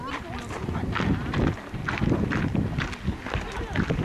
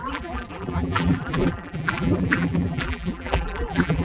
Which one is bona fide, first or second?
first